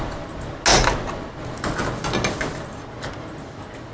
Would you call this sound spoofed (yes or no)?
no